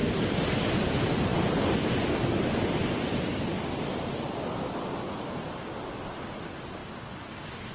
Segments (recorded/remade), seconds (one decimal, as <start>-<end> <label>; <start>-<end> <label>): 0.0-0.8 remade; 0.8-7.7 recorded